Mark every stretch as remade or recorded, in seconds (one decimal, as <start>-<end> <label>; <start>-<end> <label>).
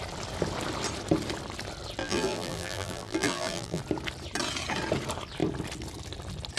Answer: 0.0-2.0 recorded; 2.0-3.8 remade; 3.8-6.6 recorded